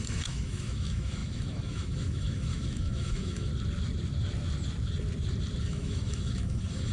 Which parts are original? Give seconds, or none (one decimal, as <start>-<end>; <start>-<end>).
3.5-5.6